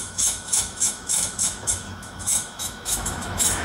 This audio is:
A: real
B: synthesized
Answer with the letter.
B